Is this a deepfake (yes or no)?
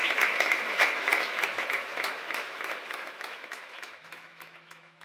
yes